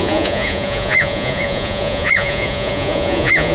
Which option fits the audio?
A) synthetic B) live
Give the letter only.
A